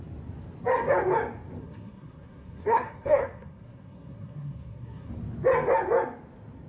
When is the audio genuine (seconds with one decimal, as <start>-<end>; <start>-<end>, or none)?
0.0-1.6; 5.1-6.7

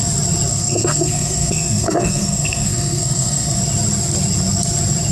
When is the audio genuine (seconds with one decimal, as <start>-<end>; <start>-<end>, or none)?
0.0-0.5; 3.6-5.1